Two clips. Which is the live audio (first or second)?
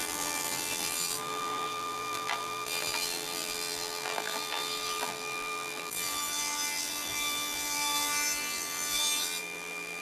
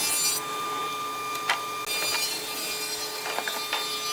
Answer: second